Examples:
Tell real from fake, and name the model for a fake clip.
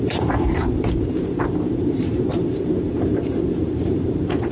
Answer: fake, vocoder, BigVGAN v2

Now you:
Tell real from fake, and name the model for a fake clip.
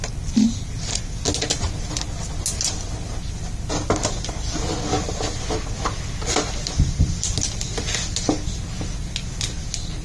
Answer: real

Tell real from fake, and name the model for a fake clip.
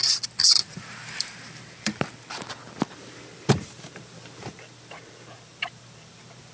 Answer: fake, vocoder, BigVGAN v2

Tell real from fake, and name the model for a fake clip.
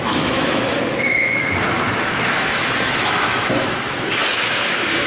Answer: fake, autoencoder, DAC-VAE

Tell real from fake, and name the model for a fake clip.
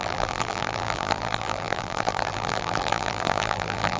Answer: fake, vocoder, BigVGAN v2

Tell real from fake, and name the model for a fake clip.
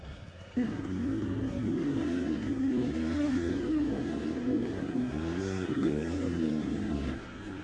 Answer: fake, codec, SNAC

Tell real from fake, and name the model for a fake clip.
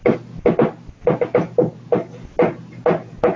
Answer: real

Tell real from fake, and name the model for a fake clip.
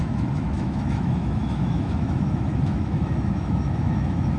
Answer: fake, autoencoder, DAC-VAE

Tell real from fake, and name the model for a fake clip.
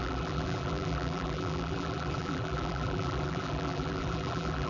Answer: fake, vocoder, BigVGAN v2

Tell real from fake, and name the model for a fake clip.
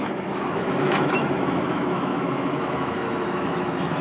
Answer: fake, autoencoder, DAC-VAE